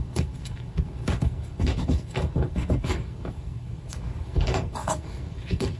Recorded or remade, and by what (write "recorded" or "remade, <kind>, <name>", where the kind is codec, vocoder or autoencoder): remade, codec, SNAC